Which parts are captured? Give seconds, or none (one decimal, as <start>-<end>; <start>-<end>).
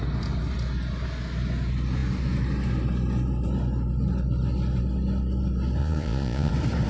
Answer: 0.0-5.8; 6.5-6.9